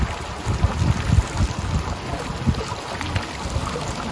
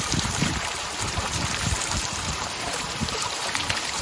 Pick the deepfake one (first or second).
second